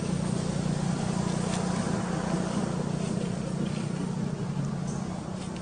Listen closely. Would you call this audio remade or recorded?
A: recorded